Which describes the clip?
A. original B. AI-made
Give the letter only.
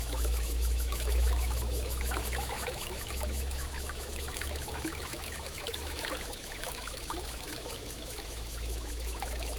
B